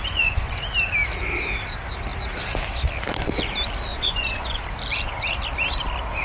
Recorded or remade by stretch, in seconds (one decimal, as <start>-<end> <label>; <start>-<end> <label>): 0.0-0.6 remade; 0.6-3.9 recorded; 3.9-4.6 remade; 4.6-6.2 recorded